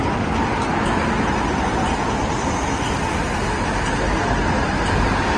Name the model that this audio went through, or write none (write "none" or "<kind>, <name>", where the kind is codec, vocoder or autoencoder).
none